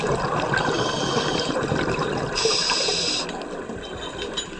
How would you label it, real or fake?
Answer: real